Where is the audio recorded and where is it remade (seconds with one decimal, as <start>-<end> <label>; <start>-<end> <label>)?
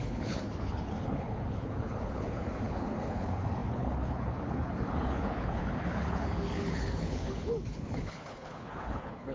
0.0-9.3 remade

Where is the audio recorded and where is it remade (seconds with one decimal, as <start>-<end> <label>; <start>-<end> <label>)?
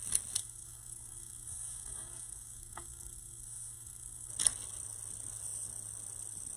0.0-0.4 recorded; 0.4-4.3 remade; 4.3-6.6 recorded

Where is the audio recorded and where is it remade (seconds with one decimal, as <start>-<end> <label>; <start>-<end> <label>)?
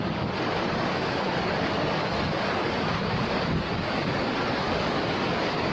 0.0-5.7 remade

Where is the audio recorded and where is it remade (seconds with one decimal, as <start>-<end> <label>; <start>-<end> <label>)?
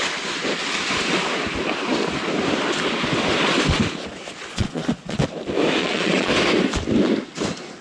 0.0-4.5 recorded; 4.5-5.2 remade; 5.2-5.8 recorded; 5.8-6.3 remade; 6.3-7.8 recorded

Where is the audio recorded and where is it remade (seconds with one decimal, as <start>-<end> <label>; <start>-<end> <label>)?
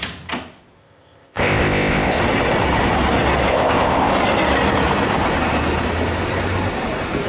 0.0-0.8 recorded; 0.8-2.2 remade; 2.2-3.5 recorded; 3.5-4.1 remade; 4.1-7.3 recorded